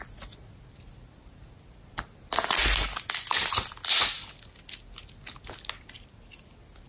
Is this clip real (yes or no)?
yes